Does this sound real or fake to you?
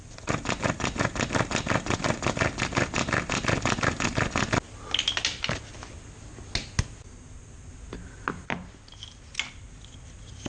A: real